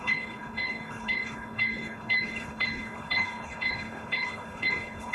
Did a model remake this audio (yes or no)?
yes